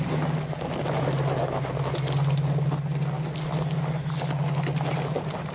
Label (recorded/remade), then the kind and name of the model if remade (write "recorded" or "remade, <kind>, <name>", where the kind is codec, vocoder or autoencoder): recorded